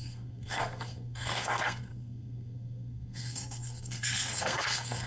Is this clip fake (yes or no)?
yes